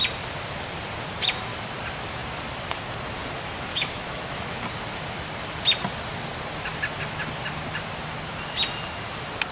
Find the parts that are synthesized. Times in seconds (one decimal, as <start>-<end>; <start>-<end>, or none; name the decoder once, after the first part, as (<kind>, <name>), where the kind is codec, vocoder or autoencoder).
3.7-4.6 (autoencoder, DAC-VAE)